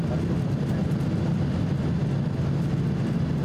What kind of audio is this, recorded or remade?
recorded